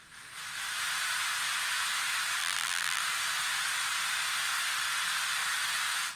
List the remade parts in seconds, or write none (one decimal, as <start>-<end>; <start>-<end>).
2.4-3.0